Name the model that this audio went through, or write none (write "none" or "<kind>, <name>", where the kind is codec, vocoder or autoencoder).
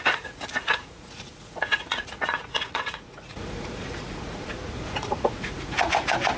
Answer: vocoder, Vocos